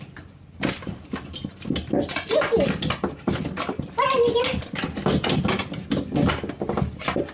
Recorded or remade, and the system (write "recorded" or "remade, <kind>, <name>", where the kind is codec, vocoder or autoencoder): recorded